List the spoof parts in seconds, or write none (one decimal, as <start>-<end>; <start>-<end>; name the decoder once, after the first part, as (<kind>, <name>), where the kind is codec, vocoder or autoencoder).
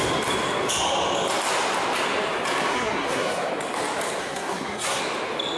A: 2.7-3.5 (codec, SNAC); 4.2-5.0